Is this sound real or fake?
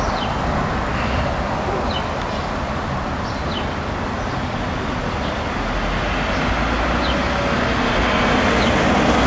real